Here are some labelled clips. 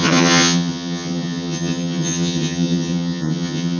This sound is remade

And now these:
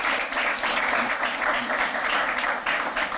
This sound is recorded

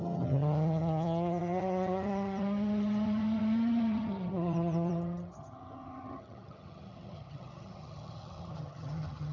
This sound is remade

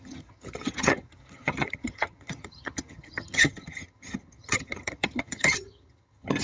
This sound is remade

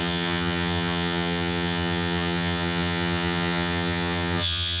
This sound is remade